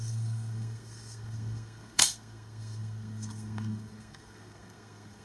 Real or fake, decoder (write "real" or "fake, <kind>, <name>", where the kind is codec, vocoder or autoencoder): fake, codec, SNAC